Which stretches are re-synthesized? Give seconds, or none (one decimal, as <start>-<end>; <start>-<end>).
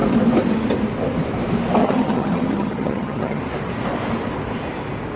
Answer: 1.8-3.4